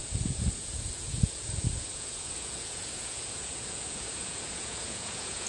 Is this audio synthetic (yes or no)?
yes